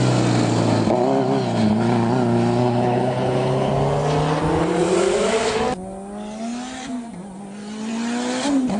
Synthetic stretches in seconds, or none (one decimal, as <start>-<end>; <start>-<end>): 2.6-3.7

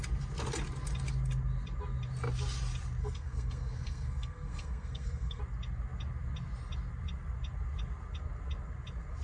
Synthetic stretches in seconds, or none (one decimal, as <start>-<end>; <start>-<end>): 3.0-5.4

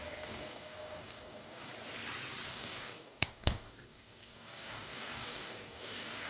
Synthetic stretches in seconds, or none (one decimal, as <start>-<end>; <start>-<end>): 0.0-1.7; 2.5-6.3

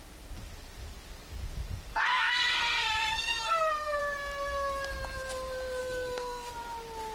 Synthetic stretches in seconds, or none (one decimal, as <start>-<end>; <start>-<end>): 1.9-4.0; 5.8-6.5

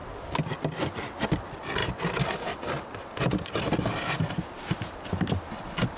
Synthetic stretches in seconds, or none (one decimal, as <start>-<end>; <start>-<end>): none

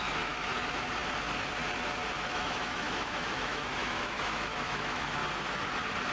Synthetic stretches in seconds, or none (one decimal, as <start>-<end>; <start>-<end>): 0.0-0.5; 2.3-5.2

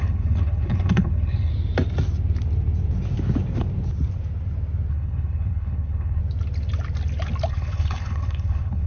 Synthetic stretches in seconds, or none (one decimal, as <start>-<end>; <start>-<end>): 0.0-1.5; 4.9-6.2; 7.5-8.9